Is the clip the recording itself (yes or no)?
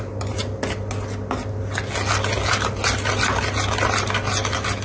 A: yes